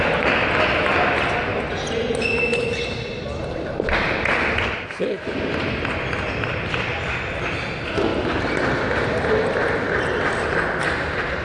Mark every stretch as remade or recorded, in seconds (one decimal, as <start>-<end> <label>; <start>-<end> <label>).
0.0-0.9 recorded; 0.9-1.7 remade; 1.7-2.5 recorded; 2.5-6.1 remade; 6.1-8.1 recorded; 8.1-10.6 remade; 10.6-11.4 recorded

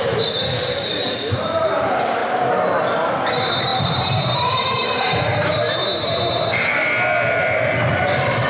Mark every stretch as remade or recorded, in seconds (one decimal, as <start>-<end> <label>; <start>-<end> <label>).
0.0-2.2 remade; 2.2-3.3 recorded; 3.3-5.8 remade; 5.8-8.1 recorded; 8.1-8.5 remade

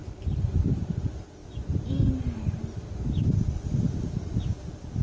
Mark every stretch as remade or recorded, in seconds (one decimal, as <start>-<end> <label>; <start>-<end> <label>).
0.0-5.0 recorded

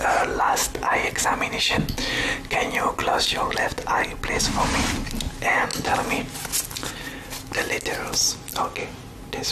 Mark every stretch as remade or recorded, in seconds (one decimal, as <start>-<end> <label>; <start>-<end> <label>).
0.0-3.0 recorded; 3.0-3.6 remade; 3.6-9.5 recorded

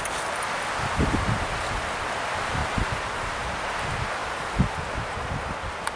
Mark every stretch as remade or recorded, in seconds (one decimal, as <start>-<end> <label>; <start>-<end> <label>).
0.0-6.0 recorded

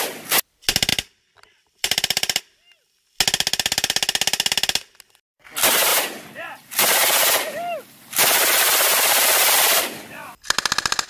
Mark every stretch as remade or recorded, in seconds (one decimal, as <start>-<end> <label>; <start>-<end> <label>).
0.0-0.9 recorded; 0.9-2.4 remade; 2.4-5.9 recorded; 5.9-10.4 remade; 10.4-11.1 recorded

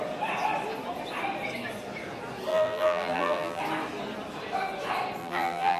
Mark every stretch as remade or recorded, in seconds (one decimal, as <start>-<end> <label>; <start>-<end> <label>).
0.0-2.5 recorded; 2.5-3.6 remade; 3.6-5.2 recorded; 5.2-5.8 remade

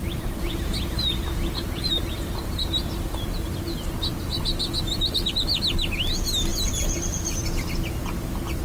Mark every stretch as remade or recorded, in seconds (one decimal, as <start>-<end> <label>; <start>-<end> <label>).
0.0-3.9 remade; 3.9-4.3 recorded; 4.3-5.6 remade; 5.6-6.5 recorded; 6.5-7.1 remade; 7.1-8.6 recorded